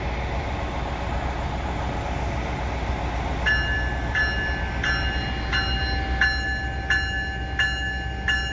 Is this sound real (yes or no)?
yes